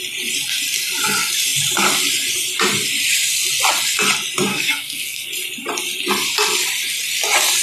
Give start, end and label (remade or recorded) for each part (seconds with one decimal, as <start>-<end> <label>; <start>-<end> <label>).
0.0-4.5 recorded; 4.5-5.3 remade; 5.3-7.6 recorded